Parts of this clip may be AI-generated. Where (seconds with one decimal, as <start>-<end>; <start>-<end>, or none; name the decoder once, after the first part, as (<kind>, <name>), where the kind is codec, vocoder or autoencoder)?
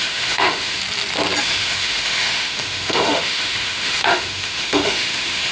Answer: 0.0-0.8 (autoencoder, DAC-VAE); 1.4-5.5